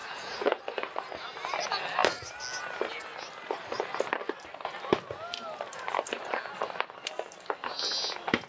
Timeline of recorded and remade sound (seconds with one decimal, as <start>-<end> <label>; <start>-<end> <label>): 0.0-0.6 remade; 0.6-8.5 recorded

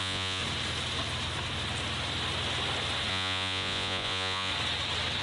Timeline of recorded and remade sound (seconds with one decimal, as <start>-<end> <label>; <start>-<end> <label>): 0.0-0.4 remade; 0.4-3.1 recorded; 3.1-4.5 remade; 4.5-5.2 recorded

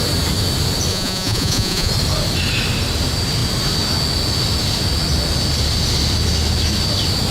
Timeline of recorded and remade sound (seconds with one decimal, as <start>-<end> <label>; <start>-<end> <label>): 0.0-0.9 recorded; 0.9-1.9 remade; 1.9-7.3 recorded

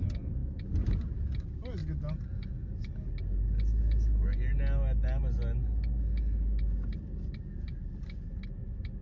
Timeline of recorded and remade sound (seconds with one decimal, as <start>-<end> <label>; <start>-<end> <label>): 0.0-9.0 recorded